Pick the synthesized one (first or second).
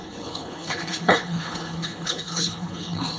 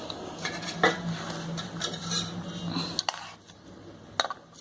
first